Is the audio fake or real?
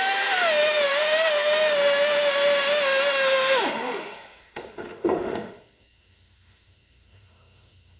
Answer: fake